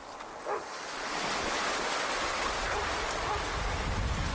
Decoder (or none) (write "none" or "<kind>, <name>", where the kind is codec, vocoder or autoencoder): none